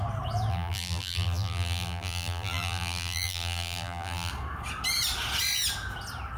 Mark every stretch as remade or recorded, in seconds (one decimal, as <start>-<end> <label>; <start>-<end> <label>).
0.0-0.5 recorded; 0.5-4.3 remade; 4.3-6.4 recorded